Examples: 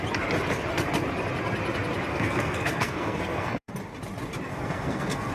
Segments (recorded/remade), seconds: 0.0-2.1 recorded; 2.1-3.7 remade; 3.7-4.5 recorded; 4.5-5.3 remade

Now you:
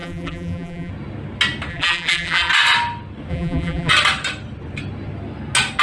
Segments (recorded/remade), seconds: 0.0-0.9 remade; 0.9-1.7 recorded; 1.7-2.5 remade; 2.5-3.3 recorded; 3.3-3.9 remade; 3.9-5.8 recorded

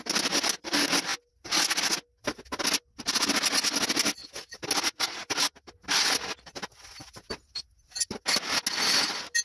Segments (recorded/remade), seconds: 0.0-9.4 recorded

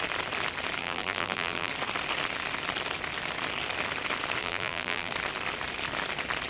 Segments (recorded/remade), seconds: 0.0-0.8 recorded; 0.8-1.7 remade; 1.7-4.4 recorded; 4.4-5.1 remade; 5.1-6.5 recorded